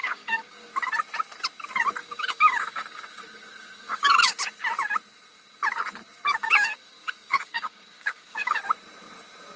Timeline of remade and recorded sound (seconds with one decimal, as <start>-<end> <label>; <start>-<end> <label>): 0.0-0.7 remade; 0.7-2.0 recorded; 2.0-4.3 remade; 4.3-6.4 recorded; 6.4-8.6 remade; 8.6-9.6 recorded